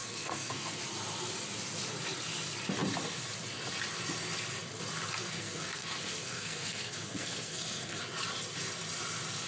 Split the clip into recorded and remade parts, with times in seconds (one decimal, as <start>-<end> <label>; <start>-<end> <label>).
0.0-0.8 remade; 0.8-5.2 recorded; 5.2-8.0 remade; 8.0-9.5 recorded